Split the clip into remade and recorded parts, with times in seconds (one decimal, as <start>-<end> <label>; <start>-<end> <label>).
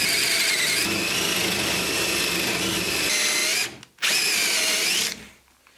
0.0-5.8 recorded